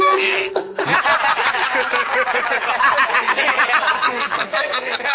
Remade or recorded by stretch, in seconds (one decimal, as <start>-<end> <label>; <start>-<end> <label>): 0.0-0.8 remade; 0.8-3.9 recorded; 3.9-5.1 remade